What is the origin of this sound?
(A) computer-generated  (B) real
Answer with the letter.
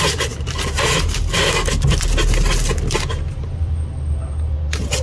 B